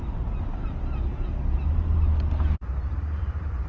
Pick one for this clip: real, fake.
fake